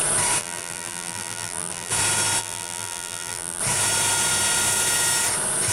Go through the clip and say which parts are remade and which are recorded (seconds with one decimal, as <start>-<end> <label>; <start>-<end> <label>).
0.0-0.4 recorded; 0.4-1.9 remade; 1.9-2.4 recorded; 2.4-3.6 remade; 3.6-5.7 recorded